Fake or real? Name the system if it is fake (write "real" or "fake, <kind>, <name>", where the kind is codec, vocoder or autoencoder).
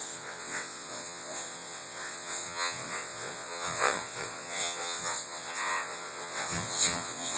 fake, vocoder, WaveNeXt